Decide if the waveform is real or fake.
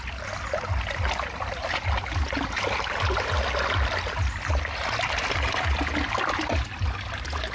real